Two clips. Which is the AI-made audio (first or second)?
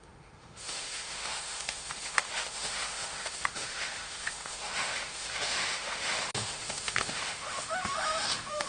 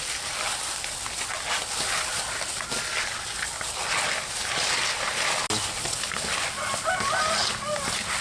first